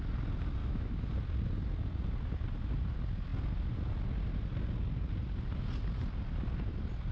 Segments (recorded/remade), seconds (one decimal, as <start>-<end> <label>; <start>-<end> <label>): 0.0-0.6 recorded; 0.6-1.1 remade; 1.1-7.1 recorded